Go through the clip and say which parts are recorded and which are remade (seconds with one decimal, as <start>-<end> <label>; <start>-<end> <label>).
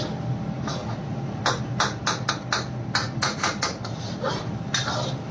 0.0-0.8 recorded; 0.8-1.4 remade; 1.4-3.0 recorded; 3.0-4.3 remade; 4.3-5.3 recorded